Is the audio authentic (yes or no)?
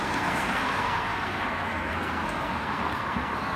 no